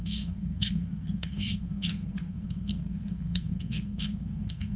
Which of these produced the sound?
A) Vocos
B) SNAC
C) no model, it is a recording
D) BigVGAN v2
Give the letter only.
B